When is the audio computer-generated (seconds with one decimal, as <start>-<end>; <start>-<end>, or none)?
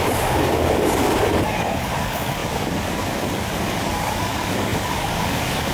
0.0-5.7